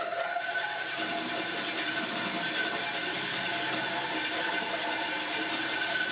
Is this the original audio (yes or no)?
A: yes